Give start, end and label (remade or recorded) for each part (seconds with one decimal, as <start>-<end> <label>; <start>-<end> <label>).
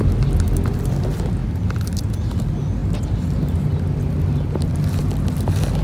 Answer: 0.0-5.8 recorded